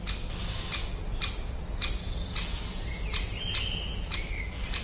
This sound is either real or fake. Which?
real